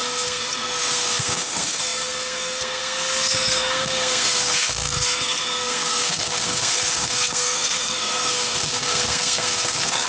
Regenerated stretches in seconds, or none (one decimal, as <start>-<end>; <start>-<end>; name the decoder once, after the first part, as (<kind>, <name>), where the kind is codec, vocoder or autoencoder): 0.0-10.1 (codec, SNAC)